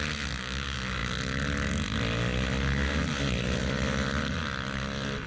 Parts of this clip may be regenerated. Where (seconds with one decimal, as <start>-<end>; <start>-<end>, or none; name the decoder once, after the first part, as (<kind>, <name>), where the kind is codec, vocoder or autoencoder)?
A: none